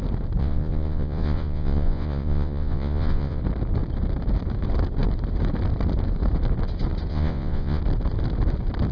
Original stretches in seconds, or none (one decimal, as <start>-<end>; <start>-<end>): 0.0-0.4; 3.4-7.1; 7.8-8.9